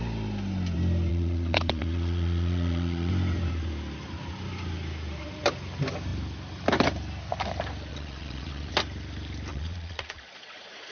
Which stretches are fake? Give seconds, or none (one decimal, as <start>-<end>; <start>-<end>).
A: 1.1-3.1; 7.9-8.7; 9.5-10.9